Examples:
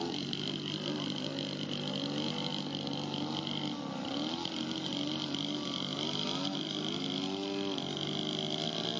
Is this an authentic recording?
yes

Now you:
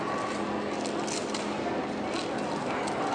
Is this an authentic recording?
yes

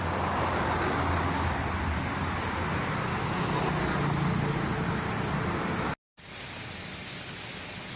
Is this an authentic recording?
yes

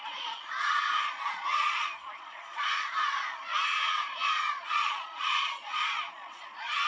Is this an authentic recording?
no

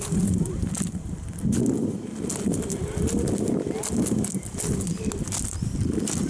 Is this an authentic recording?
yes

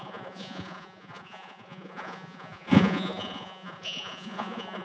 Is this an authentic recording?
no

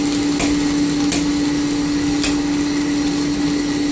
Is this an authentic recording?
yes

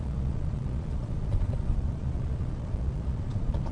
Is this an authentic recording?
no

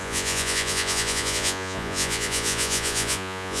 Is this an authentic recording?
no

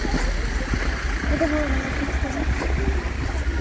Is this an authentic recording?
yes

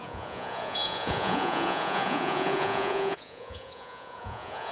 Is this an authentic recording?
no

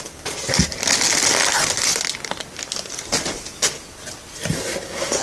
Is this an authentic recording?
yes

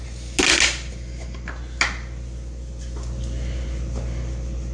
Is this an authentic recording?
yes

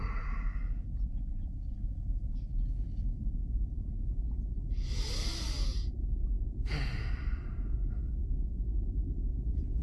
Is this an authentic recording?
yes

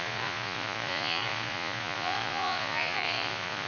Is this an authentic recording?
no